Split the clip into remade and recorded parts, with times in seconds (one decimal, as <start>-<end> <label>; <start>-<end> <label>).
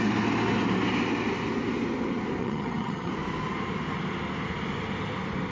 0.0-2.4 recorded; 2.4-3.1 remade; 3.1-5.5 recorded